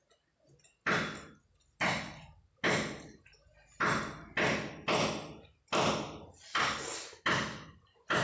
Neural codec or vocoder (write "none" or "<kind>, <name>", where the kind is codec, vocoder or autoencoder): none